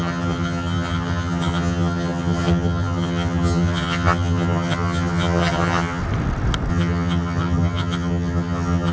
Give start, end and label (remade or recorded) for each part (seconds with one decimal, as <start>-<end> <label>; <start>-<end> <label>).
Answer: 0.0-6.0 remade; 6.0-6.7 recorded; 6.7-8.9 remade